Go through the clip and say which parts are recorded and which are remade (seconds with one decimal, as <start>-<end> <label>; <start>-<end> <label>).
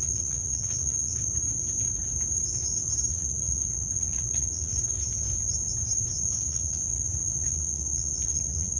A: 0.0-1.1 remade; 1.1-3.1 recorded; 3.1-4.7 remade; 4.7-6.5 recorded; 6.5-8.8 remade